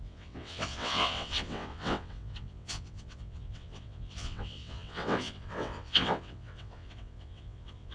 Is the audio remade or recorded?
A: remade